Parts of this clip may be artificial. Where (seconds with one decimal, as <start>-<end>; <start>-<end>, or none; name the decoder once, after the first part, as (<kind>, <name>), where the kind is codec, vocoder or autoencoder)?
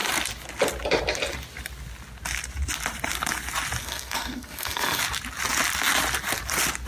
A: 3.8-5.0 (codec, SNAC)